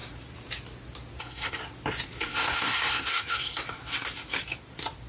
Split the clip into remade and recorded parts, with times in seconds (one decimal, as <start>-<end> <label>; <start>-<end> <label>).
0.0-1.2 recorded; 1.2-1.6 remade; 1.6-2.2 recorded; 2.2-3.5 remade; 3.5-5.1 recorded